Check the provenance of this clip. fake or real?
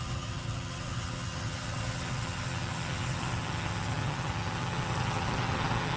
fake